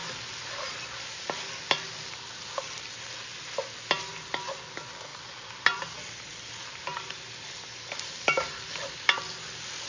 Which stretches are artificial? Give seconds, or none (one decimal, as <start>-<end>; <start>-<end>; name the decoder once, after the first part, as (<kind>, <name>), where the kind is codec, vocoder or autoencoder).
5.1-9.0 (vocoder, BigVGAN v2)